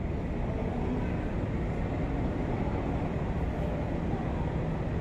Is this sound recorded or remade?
recorded